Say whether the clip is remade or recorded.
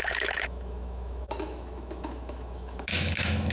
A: remade